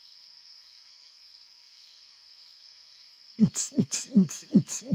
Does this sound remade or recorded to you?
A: remade